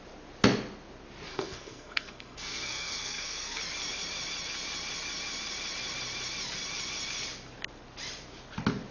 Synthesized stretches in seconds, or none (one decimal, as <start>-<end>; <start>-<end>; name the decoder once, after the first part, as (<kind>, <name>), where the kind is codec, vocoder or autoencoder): 1.3-3.6 (codec, SNAC)